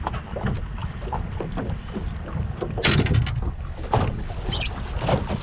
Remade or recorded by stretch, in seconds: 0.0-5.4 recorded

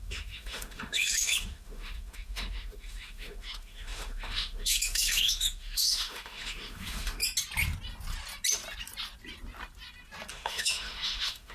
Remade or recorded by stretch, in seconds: 0.0-7.2 remade; 7.2-10.3 recorded; 10.3-11.5 remade

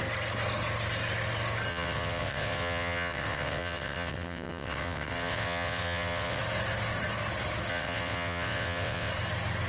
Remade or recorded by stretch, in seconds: 0.0-1.7 recorded; 1.7-6.4 remade; 6.4-7.7 recorded; 7.7-9.1 remade; 9.1-9.7 recorded

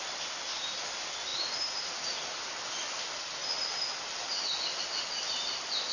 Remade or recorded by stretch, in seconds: 0.0-5.9 recorded